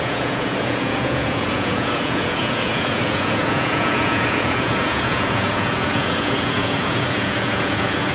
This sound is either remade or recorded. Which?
remade